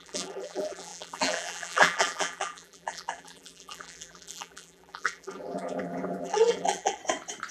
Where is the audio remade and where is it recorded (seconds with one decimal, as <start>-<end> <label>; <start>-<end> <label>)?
0.0-7.0 remade; 7.0-7.5 recorded